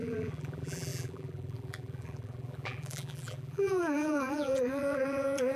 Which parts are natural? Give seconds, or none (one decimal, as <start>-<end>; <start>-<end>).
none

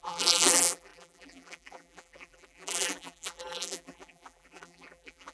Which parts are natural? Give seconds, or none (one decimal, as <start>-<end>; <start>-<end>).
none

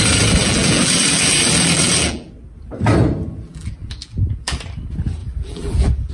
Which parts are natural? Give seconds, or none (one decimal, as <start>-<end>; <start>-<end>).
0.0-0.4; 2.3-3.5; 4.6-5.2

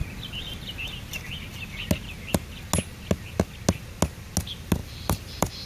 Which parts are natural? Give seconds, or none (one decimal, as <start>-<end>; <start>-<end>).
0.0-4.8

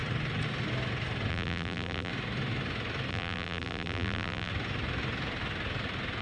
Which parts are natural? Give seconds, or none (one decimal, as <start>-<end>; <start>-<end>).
0.0-1.3; 2.1-3.1; 4.5-6.2

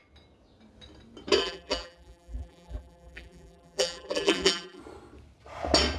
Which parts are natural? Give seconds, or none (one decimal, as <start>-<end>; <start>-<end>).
0.0-1.4; 4.8-6.0

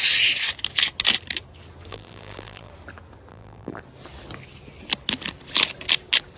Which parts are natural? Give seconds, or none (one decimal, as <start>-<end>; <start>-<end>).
0.0-1.9; 2.7-3.3; 3.8-6.4